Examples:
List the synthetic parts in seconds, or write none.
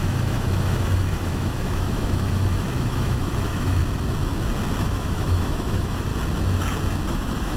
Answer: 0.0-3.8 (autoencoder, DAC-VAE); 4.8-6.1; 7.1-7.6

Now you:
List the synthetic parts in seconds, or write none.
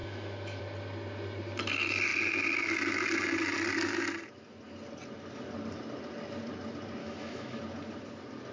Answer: 0.0-0.6 (autoencoder, DAC-VAE); 7.0-7.6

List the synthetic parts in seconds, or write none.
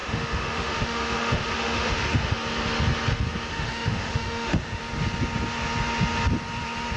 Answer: 0.0-2.3 (autoencoder, DAC-VAE); 3.5-4.8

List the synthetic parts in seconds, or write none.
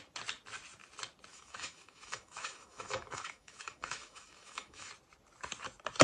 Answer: 1.3-4.9 (autoencoder, DAC-VAE)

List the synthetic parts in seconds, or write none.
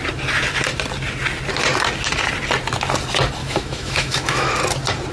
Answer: 3.4-4.5 (autoencoder, DAC-VAE)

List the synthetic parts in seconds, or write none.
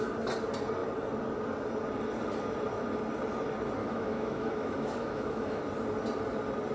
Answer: 3.8-5.6 (autoencoder, DAC-VAE)